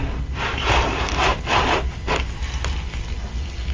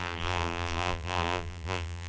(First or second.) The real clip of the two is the first